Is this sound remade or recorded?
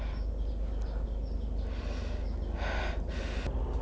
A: recorded